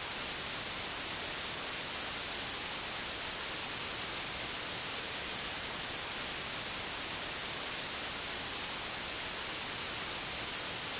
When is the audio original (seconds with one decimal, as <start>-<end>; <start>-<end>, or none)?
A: 0.0-11.0